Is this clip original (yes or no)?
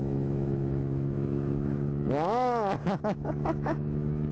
no